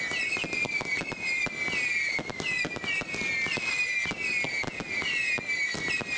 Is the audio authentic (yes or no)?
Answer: yes